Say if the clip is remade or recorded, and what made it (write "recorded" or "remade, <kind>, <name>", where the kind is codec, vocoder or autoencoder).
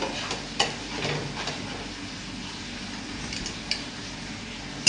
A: recorded